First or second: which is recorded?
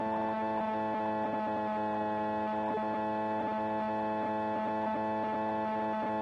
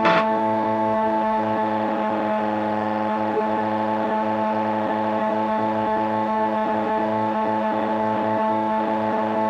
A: first